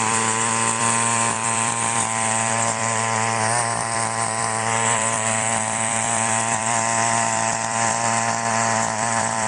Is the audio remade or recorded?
remade